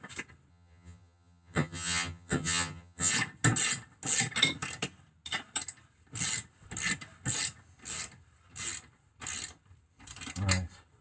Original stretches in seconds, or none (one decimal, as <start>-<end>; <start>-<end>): 0.0-0.5; 3.1-11.0

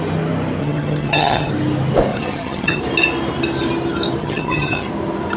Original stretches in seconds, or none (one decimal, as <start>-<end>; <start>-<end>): 0.0-0.6; 1.5-2.1; 2.8-4.2; 4.9-5.4

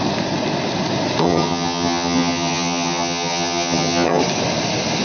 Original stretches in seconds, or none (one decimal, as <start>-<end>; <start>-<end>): 0.0-1.2; 4.2-5.0

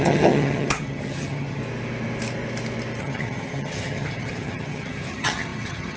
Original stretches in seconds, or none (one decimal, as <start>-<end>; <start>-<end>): 1.6-3.0

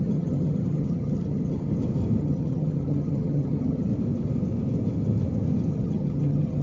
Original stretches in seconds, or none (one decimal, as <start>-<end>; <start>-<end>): 1.7-2.2; 3.9-5.7

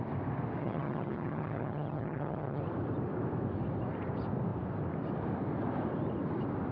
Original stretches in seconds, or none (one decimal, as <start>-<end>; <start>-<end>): 0.0-0.6; 2.6-6.7

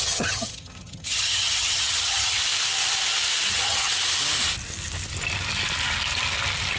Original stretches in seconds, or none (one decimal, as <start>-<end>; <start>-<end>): 2.4-3.5; 3.9-6.8